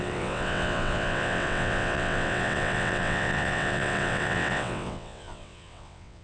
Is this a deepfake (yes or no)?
yes